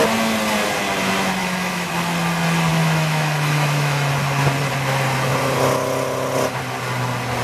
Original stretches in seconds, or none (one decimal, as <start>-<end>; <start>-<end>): 0.0-1.4; 1.9-2.7; 4.1-7.4